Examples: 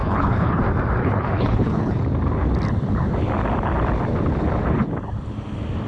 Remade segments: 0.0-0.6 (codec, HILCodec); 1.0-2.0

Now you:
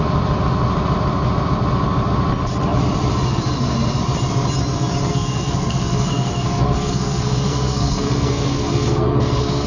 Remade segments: 5.1-9.7 (codec, SNAC)

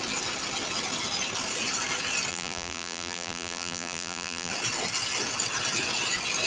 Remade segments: 2.3-4.5 (vocoder, BigVGAN v2)

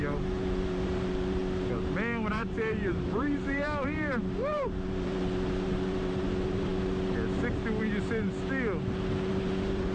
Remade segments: 0.0-1.4 (vocoder, BigVGAN v2); 2.3-6.7; 9.3-9.9

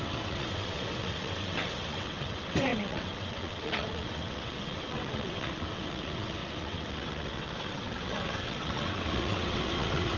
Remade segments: 0.0-10.2 (vocoder, WaveNeXt)

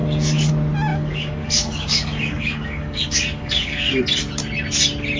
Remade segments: 0.0-0.5 (codec, DAC); 0.9-4.0